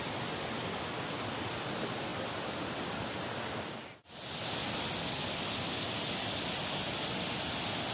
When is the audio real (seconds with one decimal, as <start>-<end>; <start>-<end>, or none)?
0.0-7.9